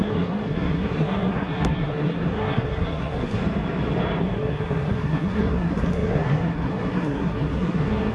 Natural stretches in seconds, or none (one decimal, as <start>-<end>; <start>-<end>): 3.4-4.2